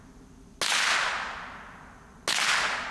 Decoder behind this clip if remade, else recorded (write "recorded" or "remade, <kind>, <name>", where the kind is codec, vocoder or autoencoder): recorded